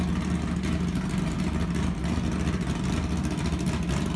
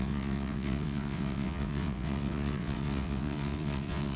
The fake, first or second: second